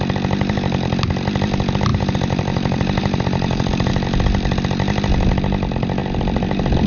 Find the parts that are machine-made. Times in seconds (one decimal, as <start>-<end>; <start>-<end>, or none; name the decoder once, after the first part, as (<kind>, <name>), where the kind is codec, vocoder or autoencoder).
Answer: 1.9-3.9 (vocoder, BigVGAN v2)